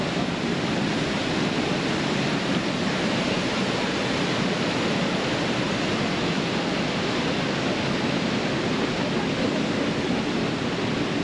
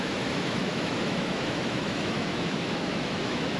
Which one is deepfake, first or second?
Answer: second